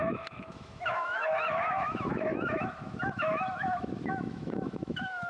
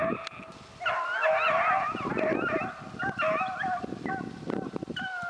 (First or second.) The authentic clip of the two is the second